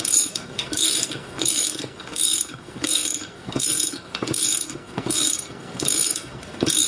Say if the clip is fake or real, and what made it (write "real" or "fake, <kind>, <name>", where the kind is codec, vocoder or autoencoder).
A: fake, codec, SNAC